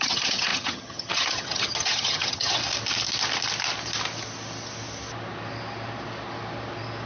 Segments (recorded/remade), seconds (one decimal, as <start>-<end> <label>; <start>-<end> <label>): 0.0-2.6 remade; 2.6-7.1 recorded